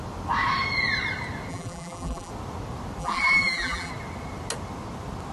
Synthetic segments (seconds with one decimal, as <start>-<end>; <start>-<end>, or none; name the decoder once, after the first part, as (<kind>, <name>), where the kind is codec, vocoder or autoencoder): 1.5-2.3 (vocoder, BigVGAN v2); 3.0-3.9